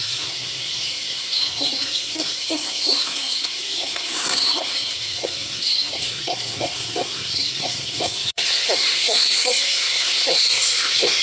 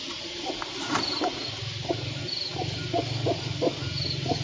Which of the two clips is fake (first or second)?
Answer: first